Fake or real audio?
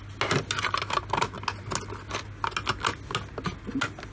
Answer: real